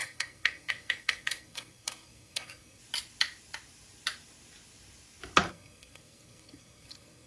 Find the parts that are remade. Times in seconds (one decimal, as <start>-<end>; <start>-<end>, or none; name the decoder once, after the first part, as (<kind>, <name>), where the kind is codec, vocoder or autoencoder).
0.0-2.8 (codec, SNAC); 5.5-7.3